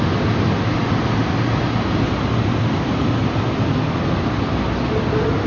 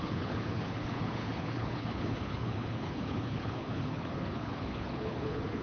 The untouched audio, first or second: first